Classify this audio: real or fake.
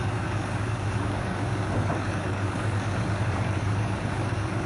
fake